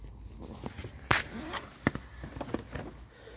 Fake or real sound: real